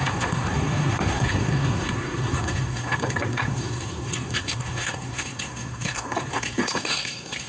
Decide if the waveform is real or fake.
fake